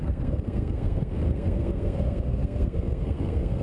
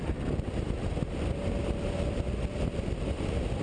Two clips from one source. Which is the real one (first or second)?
second